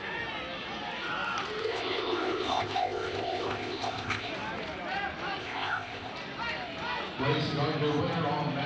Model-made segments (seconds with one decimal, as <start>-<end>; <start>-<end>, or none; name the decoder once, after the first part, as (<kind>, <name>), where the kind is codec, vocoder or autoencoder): 1.6-4.3 (codec, ZipCodec); 5.4-6.1